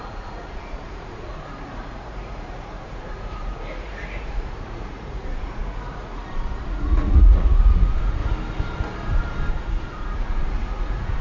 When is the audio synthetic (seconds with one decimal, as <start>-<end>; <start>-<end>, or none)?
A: 0.0-8.2; 9.5-11.2